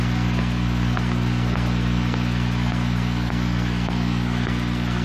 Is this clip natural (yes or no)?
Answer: no